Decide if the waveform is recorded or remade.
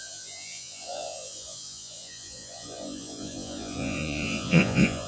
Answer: remade